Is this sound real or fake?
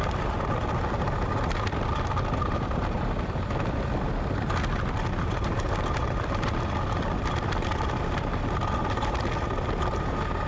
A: real